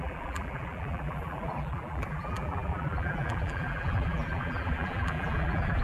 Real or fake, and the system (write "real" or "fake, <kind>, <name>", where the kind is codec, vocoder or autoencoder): fake, vocoder, BigVGAN v2